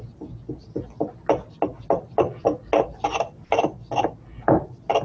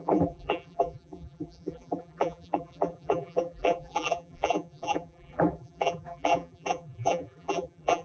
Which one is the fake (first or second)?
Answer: second